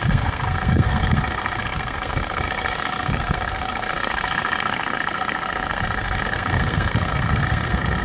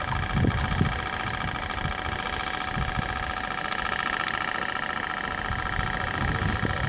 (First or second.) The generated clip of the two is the first